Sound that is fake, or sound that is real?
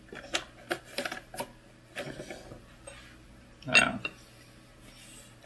real